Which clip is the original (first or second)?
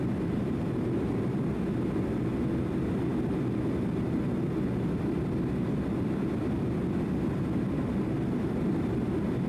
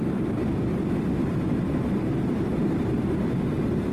first